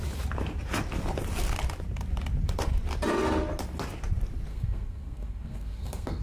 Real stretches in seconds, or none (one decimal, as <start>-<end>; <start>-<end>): 0.0-4.5